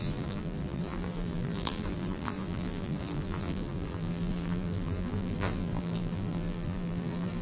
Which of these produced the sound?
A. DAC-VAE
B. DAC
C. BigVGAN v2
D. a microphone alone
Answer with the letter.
C